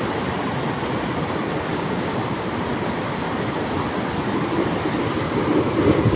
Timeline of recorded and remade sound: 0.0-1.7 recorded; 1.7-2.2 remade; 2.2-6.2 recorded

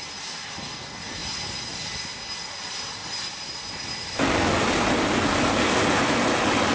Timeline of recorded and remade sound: 0.0-6.7 recorded

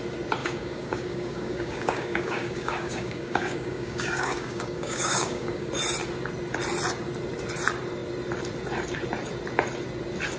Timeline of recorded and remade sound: 0.0-0.4 recorded; 0.4-5.7 remade; 5.7-10.4 recorded

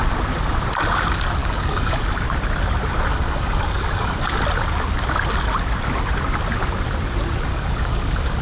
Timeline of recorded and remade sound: 0.0-1.4 recorded; 1.4-2.0 remade; 2.0-3.1 recorded; 3.1-4.4 remade; 4.4-7.5 recorded; 7.5-8.4 remade